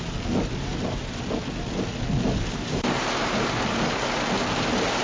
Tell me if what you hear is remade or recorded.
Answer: recorded